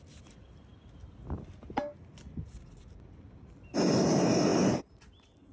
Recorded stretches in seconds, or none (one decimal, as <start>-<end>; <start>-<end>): 0.0-4.5; 5.1-5.5